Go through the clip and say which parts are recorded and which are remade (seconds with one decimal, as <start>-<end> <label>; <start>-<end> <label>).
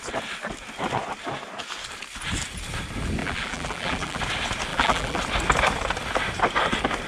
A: 0.0-3.2 recorded; 3.2-4.2 remade; 4.2-4.7 recorded; 4.7-5.2 remade; 5.2-7.1 recorded